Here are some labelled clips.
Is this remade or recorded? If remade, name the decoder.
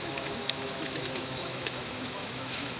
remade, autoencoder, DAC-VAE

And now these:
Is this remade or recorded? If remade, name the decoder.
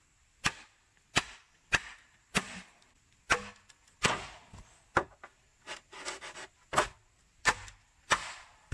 recorded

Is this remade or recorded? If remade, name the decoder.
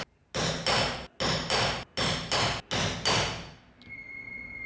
recorded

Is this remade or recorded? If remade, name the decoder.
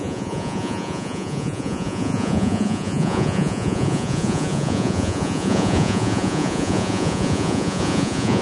remade, vocoder, Vocos